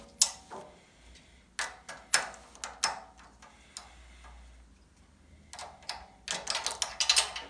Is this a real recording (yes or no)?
yes